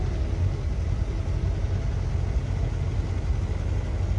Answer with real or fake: real